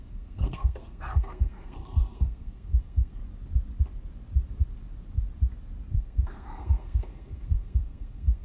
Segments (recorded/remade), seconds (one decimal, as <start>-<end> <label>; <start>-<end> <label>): 0.0-3.2 remade; 3.2-5.9 recorded; 5.9-8.4 remade